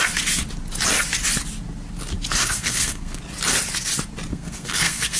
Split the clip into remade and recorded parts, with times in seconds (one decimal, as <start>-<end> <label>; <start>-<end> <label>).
0.0-2.4 recorded; 2.4-3.2 remade; 3.2-4.3 recorded; 4.3-5.2 remade